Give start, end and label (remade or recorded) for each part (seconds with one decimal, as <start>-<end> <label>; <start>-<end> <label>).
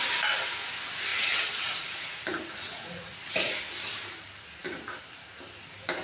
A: 0.0-1.1 recorded; 1.1-3.7 remade; 3.7-6.0 recorded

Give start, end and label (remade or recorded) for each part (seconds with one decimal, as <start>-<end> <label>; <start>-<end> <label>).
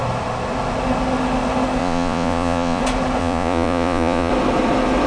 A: 0.0-1.8 recorded; 1.8-2.8 remade; 2.8-3.2 recorded; 3.2-4.3 remade; 4.3-5.1 recorded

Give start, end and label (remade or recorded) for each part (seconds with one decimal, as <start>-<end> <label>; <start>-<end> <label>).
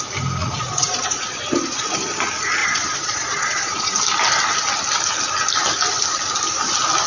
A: 0.0-0.4 recorded; 0.4-1.9 remade; 1.9-2.6 recorded; 2.6-3.9 remade; 3.9-7.1 recorded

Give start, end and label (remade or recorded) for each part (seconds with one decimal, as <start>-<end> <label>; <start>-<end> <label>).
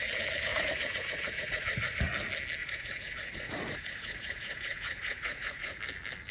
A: 0.0-0.5 recorded; 0.5-2.0 remade; 2.0-2.6 recorded; 2.6-5.8 remade; 5.8-6.3 recorded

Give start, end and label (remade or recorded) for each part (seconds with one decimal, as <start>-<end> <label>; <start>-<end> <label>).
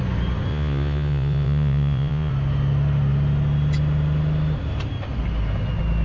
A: 0.0-0.5 recorded; 0.5-2.3 remade; 2.3-6.0 recorded